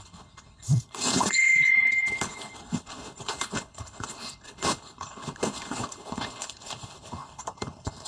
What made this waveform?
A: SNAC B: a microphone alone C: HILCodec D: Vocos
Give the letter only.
C